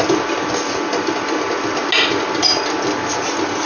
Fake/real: real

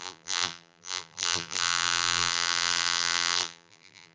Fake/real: fake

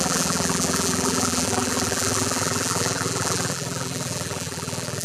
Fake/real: fake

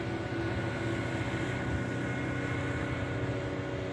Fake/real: real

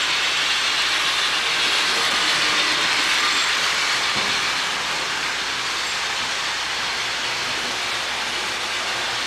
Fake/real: real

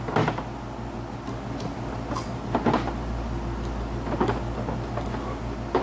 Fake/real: real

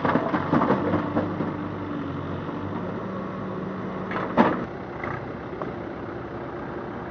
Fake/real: real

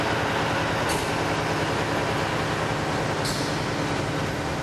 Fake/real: real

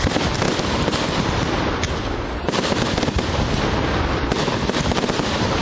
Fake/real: real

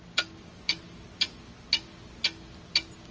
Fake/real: real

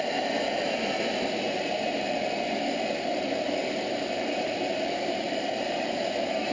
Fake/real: fake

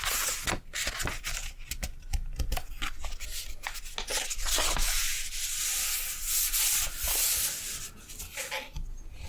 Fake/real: real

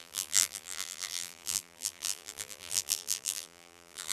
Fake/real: fake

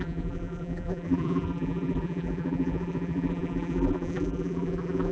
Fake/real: fake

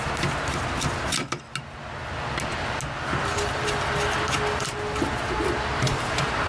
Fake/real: real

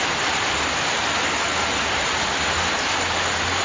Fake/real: real